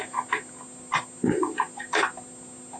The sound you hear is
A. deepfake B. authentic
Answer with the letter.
B